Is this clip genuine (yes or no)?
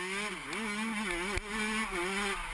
yes